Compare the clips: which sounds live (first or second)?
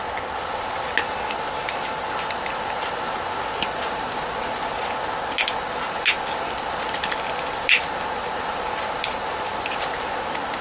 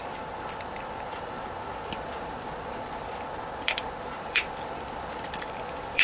first